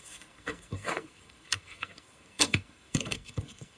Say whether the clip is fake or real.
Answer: fake